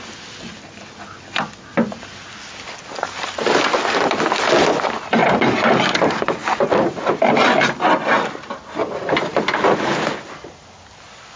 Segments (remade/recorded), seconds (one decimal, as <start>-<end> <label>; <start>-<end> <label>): 0.0-11.4 recorded